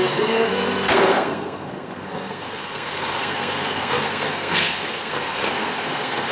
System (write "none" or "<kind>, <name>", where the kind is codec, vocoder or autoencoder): codec, SNAC